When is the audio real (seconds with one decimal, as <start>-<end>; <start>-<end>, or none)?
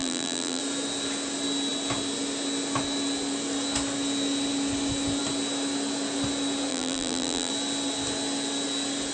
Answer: 0.6-6.7; 7.5-9.1